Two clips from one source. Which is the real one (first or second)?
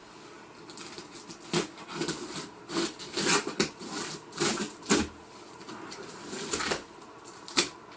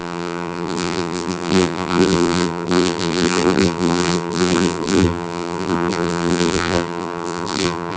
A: first